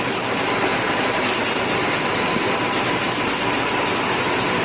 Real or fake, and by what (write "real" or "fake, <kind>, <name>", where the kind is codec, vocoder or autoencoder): real